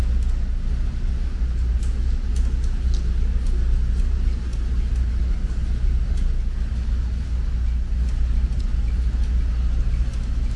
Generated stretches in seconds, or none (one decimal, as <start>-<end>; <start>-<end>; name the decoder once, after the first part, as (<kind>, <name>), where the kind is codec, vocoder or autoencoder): none